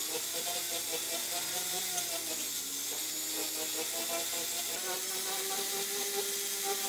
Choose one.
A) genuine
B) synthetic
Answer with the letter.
A